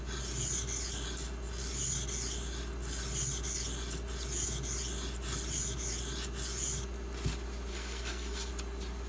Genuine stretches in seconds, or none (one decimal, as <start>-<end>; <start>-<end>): 0.0-7.7; 8.5-9.1